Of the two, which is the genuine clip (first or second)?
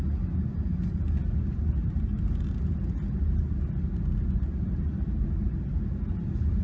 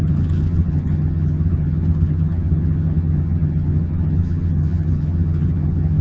first